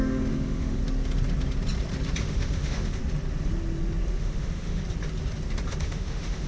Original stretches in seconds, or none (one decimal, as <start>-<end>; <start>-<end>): 0.8-2.2; 3.0-4.2; 4.8-5.8